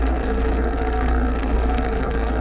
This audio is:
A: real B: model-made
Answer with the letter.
B